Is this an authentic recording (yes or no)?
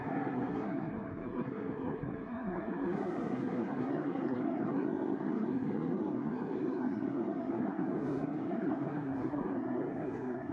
no